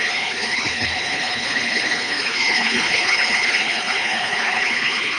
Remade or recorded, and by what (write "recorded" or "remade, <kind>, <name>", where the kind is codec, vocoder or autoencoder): remade, codec, HILCodec